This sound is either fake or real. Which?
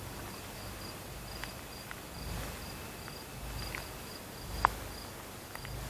real